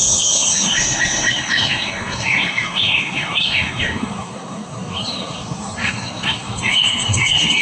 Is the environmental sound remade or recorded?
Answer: remade